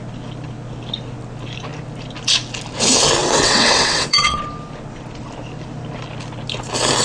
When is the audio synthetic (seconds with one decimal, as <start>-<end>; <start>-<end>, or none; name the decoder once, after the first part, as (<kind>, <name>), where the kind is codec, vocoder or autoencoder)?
3.2-4.4 (vocoder, WaveNeXt)